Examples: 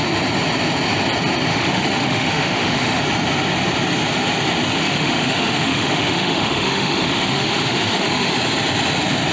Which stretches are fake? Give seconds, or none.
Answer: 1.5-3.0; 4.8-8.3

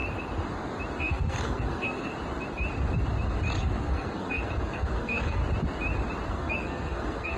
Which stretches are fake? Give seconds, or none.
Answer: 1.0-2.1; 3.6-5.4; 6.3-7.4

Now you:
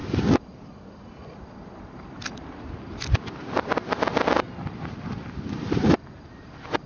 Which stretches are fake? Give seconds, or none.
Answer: none

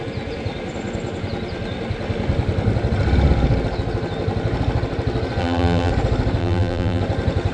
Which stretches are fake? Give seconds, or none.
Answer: 5.4-5.9; 6.4-7.0

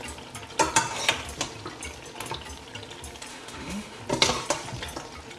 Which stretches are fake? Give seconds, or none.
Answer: 3.3-4.0

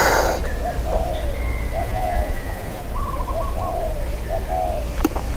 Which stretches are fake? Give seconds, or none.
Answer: 1.8-2.8

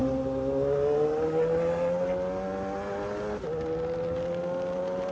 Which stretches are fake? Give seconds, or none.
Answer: none

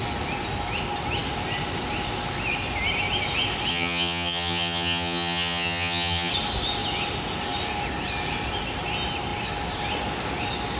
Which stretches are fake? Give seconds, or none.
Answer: 3.7-6.3